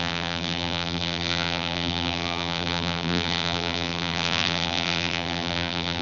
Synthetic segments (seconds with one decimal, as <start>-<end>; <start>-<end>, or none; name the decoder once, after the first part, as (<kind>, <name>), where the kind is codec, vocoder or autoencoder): 0.0-6.0 (vocoder, BigVGAN v2)